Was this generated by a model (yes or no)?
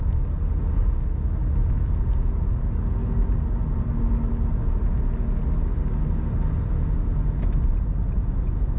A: no